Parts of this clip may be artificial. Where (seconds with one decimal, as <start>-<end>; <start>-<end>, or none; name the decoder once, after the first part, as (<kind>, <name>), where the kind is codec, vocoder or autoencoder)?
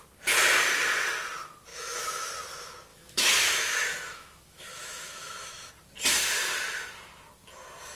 1.7-2.3 (autoencoder, DAC-VAE); 2.9-5.7